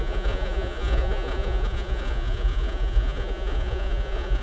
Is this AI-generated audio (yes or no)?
yes